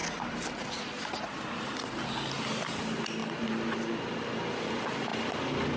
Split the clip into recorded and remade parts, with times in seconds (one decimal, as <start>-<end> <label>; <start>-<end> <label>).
0.0-5.8 recorded